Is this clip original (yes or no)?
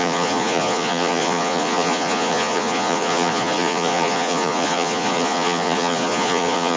no